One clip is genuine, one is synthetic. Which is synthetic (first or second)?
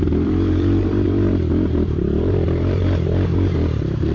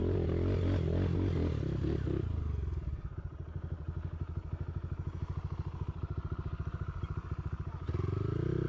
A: first